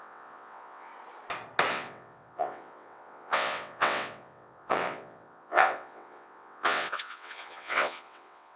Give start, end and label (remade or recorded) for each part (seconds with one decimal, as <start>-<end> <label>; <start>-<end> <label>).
0.0-0.9 remade; 0.9-1.7 recorded; 1.7-8.6 remade

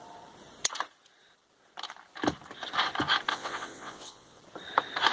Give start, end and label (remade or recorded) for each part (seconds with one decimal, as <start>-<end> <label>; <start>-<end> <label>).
0.0-3.3 recorded; 3.3-4.4 remade; 4.4-5.1 recorded

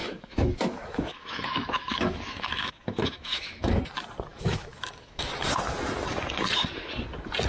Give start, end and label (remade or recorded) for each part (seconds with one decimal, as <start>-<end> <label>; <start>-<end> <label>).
0.0-3.8 remade; 3.8-4.3 recorded; 4.3-5.3 remade; 5.3-7.5 recorded

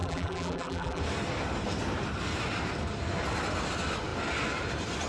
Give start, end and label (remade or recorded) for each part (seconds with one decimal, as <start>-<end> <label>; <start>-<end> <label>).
0.0-1.0 remade; 1.0-5.1 recorded

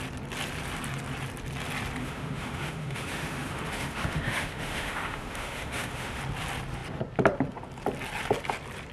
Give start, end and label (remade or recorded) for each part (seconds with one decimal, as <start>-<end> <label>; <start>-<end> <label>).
0.0-2.0 recorded; 2.0-6.2 remade; 6.2-8.9 recorded

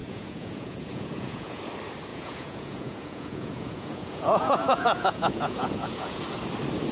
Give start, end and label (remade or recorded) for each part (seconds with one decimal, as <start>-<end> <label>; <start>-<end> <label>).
0.0-1.6 remade; 1.6-2.1 recorded; 2.1-6.2 remade; 6.2-6.9 recorded